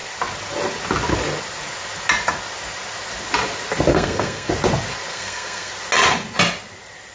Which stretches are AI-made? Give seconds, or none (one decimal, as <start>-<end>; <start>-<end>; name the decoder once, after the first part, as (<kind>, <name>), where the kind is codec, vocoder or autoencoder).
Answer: 3.9-4.5 (codec, SNAC); 5.1-5.7